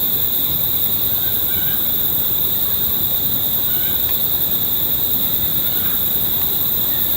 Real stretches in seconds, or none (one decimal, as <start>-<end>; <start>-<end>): 0.0-5.5